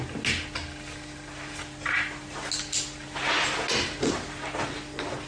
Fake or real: real